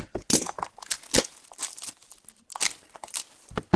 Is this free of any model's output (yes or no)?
yes